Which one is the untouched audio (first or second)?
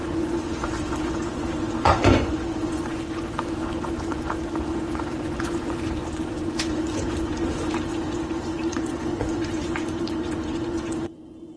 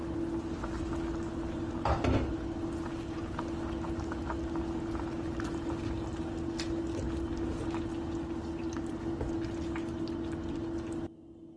second